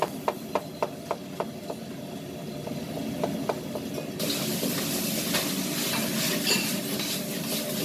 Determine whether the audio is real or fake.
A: real